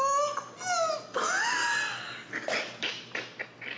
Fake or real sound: real